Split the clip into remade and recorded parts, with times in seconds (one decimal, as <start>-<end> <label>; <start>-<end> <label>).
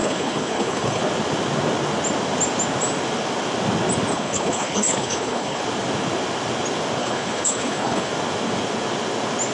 0.0-1.0 remade; 1.0-4.1 recorded; 4.1-5.6 remade; 5.6-7.0 recorded; 7.0-8.1 remade; 8.1-9.5 recorded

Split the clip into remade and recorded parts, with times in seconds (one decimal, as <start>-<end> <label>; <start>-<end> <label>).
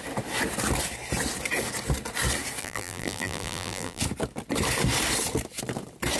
0.0-2.6 recorded; 2.6-4.0 remade; 4.0-6.2 recorded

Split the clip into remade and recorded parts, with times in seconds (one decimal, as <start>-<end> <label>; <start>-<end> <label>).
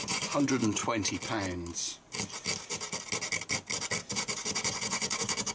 0.0-0.8 remade; 0.8-4.1 recorded; 4.1-5.5 remade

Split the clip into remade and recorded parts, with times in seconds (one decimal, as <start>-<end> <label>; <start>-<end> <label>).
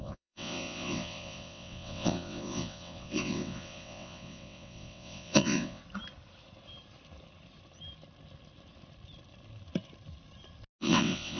0.0-5.8 remade; 5.8-10.8 recorded; 10.8-11.4 remade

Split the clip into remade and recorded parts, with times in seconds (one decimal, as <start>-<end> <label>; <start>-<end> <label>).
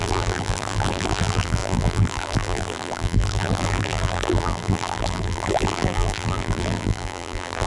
0.0-7.7 remade